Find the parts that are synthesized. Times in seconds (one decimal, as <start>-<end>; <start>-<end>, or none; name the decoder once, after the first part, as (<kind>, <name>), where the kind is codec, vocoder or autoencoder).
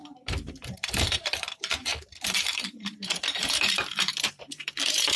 0.0-5.2 (vocoder, BigVGAN v2)